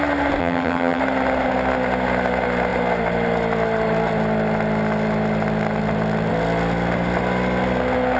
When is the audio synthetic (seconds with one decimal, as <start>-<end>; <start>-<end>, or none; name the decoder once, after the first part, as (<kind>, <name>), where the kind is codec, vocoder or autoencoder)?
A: 0.4-1.0 (vocoder, HiFi-GAN)